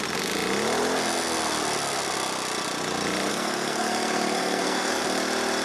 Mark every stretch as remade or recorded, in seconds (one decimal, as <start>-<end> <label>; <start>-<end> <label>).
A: 0.0-3.3 recorded; 3.3-5.0 remade; 5.0-5.6 recorded